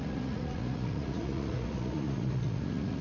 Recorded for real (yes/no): no